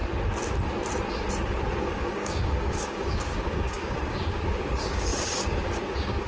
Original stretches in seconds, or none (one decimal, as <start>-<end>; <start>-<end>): 0.0-1.8